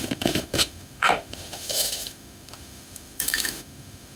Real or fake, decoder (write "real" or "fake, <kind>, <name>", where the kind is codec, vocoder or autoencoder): fake, autoencoder, DAC-VAE